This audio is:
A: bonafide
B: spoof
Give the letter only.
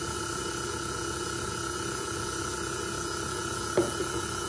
B